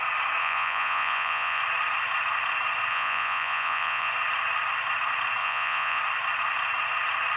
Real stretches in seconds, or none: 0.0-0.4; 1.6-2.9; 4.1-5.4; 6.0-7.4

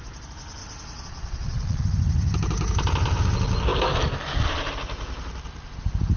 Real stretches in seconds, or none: 0.0-0.6; 1.8-6.2

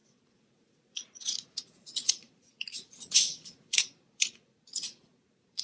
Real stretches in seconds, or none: none

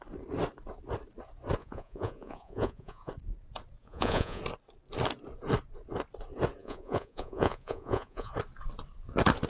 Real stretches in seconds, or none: 0.0-1.6; 3.1-3.8; 4.4-6.6; 8.3-9.5

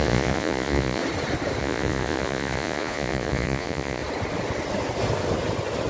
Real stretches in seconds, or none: 1.0-1.6; 4.0-5.9

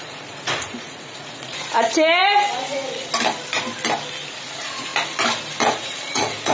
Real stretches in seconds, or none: 2.2-4.3; 4.9-5.7

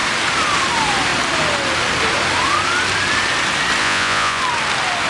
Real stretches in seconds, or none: 0.0-3.8; 4.4-5.1

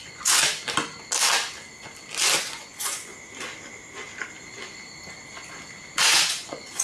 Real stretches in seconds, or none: 0.4-2.4; 3.1-6.0